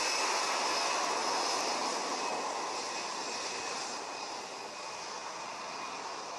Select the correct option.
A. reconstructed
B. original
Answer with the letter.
B